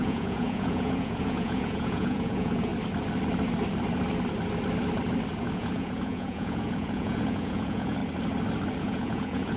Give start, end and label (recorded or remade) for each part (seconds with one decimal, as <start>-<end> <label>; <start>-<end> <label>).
0.0-2.7 remade; 2.7-5.5 recorded; 5.5-8.0 remade; 8.0-8.8 recorded; 8.8-9.6 remade